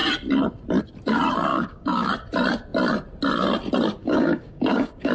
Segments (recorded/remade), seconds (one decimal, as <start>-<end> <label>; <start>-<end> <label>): 0.0-1.5 recorded; 1.5-2.1 remade; 2.1-4.0 recorded; 4.0-5.1 remade